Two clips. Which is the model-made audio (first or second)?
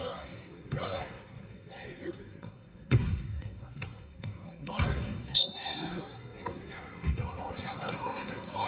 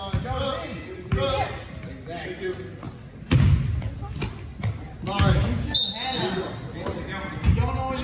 first